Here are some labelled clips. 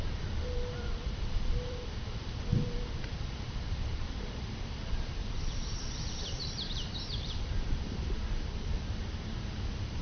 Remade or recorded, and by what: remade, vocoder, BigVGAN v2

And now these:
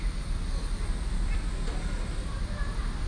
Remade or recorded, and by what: recorded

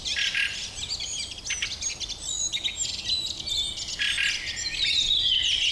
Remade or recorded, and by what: recorded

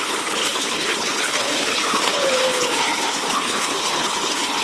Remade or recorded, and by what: remade, codec, HILCodec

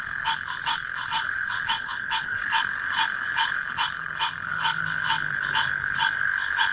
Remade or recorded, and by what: remade, codec, HILCodec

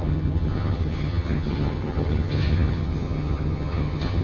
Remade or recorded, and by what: remade, vocoder, HiFi-GAN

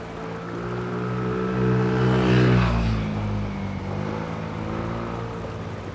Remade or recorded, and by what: recorded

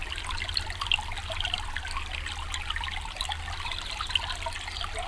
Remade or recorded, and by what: recorded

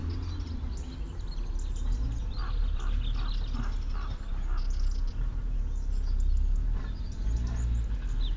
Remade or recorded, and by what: recorded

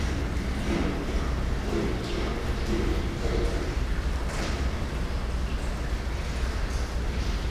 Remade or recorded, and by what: recorded